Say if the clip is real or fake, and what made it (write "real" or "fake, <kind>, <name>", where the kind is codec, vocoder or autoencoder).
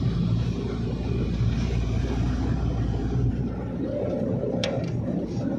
fake, vocoder, BigVGAN v2